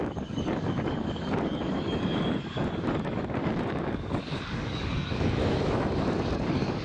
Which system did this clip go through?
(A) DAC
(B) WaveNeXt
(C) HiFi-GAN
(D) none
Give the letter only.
A